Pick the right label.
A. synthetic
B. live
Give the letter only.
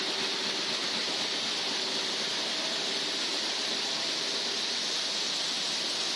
B